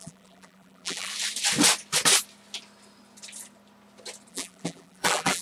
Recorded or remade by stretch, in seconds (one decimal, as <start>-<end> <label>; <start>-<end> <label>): 0.0-1.1 remade; 1.1-4.3 recorded; 4.3-5.4 remade